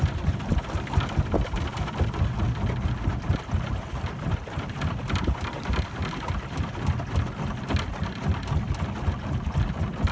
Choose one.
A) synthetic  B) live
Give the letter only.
B